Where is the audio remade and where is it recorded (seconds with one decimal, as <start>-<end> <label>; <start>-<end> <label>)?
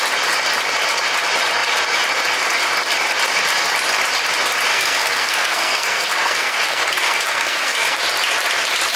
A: 0.0-4.7 recorded; 4.7-8.0 remade; 8.0-9.0 recorded